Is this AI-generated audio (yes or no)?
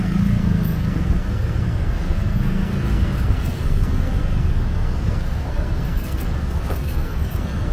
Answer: yes